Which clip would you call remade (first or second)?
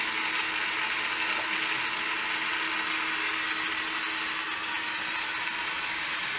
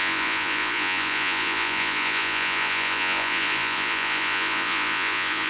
second